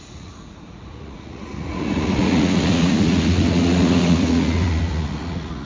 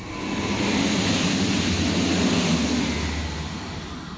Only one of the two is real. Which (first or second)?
second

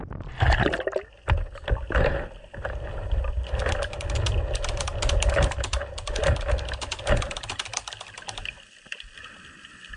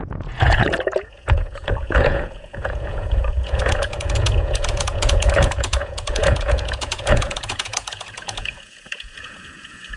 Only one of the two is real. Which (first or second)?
first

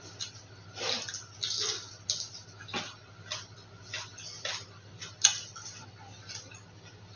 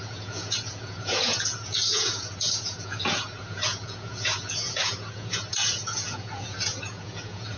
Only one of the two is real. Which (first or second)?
first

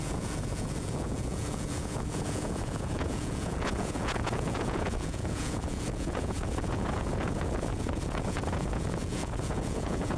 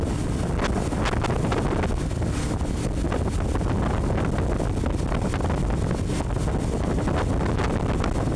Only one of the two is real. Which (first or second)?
second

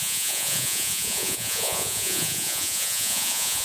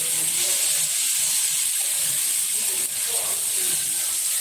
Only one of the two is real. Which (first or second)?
second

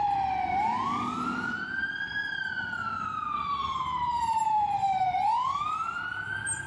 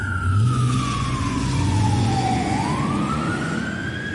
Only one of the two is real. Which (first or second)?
first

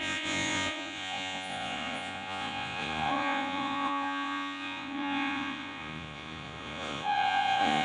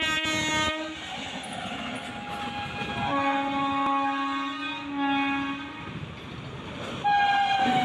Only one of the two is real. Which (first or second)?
second